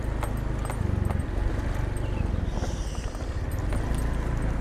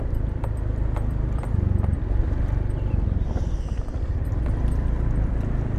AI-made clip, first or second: second